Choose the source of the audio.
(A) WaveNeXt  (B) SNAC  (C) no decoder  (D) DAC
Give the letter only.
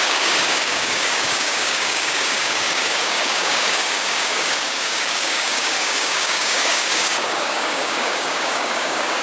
D